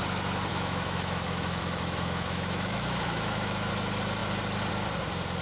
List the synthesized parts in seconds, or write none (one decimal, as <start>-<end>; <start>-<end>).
0.5-3.7

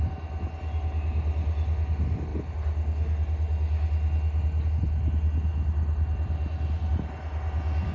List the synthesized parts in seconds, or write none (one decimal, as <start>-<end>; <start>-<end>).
none

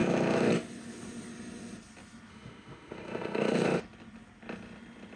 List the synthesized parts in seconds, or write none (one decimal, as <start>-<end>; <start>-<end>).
0.0-0.5; 2.3-3.8

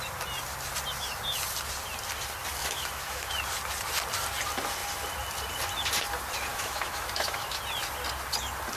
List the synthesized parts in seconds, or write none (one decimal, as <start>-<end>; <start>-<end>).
2.6-3.3; 6.5-7.6